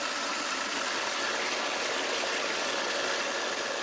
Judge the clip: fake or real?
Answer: real